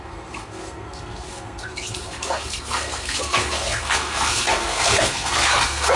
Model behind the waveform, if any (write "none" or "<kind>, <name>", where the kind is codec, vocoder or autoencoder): codec, SNAC